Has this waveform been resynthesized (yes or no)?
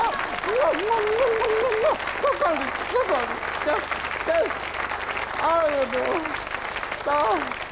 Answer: no